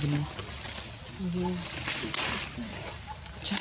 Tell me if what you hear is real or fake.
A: real